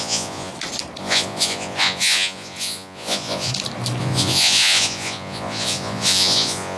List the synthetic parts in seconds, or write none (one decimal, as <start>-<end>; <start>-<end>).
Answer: 0.0-0.5; 1.0-3.5; 4.0-6.8